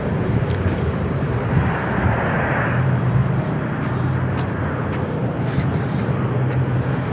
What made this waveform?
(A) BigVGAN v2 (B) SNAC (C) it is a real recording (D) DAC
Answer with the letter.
A